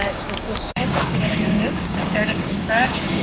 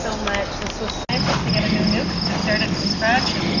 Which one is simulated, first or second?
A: first